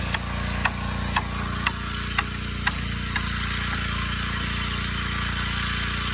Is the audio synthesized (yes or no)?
no